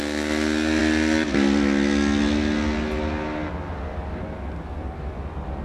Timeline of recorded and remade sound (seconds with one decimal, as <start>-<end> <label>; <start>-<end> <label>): 0.0-5.6 recorded